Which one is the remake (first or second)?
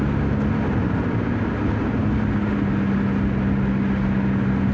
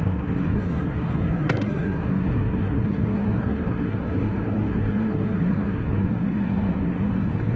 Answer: second